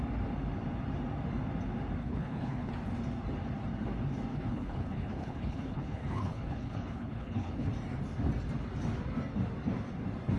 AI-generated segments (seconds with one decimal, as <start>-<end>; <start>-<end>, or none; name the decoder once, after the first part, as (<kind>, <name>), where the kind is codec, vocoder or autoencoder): 2.0-2.7 (codec, HILCodec); 4.3-7.7